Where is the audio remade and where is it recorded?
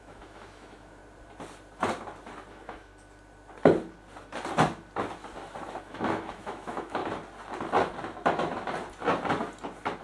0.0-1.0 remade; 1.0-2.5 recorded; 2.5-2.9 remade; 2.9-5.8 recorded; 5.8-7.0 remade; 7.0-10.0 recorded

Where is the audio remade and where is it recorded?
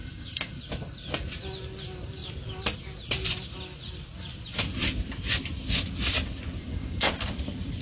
0.0-0.6 remade; 0.6-6.6 recorded; 6.6-7.1 remade; 7.1-7.8 recorded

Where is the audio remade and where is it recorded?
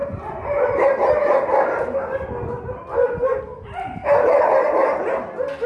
0.0-5.7 recorded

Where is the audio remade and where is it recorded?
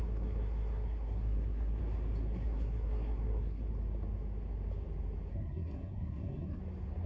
0.0-1.8 remade; 1.8-2.3 recorded; 2.3-3.7 remade; 3.7-5.3 recorded; 5.3-6.6 remade; 6.6-7.1 recorded